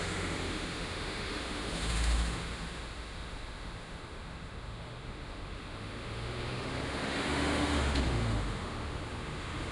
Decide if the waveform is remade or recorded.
remade